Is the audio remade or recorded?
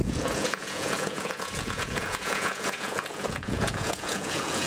remade